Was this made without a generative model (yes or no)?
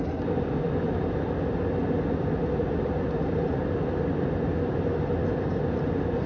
yes